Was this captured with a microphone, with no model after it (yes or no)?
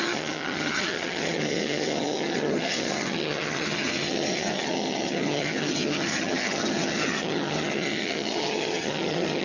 no